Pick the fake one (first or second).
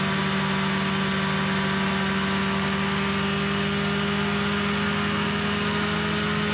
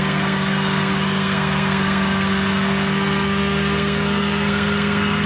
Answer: second